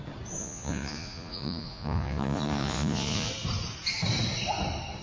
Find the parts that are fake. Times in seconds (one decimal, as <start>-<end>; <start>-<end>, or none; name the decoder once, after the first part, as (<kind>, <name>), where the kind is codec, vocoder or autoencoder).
0.4-3.3 (vocoder, Vocos)